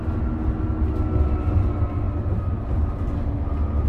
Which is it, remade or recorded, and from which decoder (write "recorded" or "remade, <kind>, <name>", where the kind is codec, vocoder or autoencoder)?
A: recorded